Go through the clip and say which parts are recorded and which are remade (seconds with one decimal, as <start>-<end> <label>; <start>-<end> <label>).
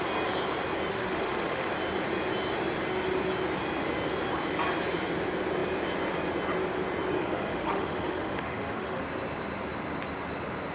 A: 0.0-0.9 recorded; 0.9-1.7 remade; 1.7-7.2 recorded; 7.2-9.0 remade; 9.0-10.7 recorded